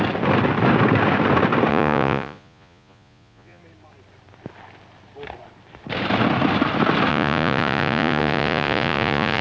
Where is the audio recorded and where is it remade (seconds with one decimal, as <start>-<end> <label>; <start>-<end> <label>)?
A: 0.0-1.7 recorded; 1.7-3.6 remade; 3.6-7.1 recorded; 7.1-9.4 remade